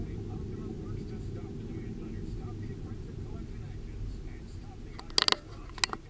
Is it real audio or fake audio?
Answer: real